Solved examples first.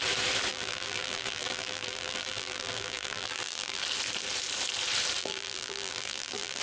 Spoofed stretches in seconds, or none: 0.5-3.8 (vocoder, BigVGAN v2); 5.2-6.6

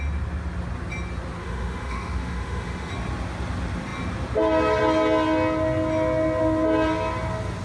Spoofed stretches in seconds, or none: 1.4-2.9 (autoencoder, DAC-VAE)

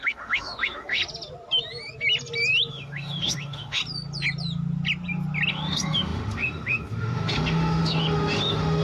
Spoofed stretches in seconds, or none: 0.0-1.0 (autoencoder, DAC-VAE); 2.7-3.8; 5.5-8.8

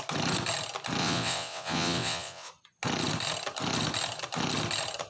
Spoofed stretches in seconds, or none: 1.0-2.5 (vocoder, WaveNeXt)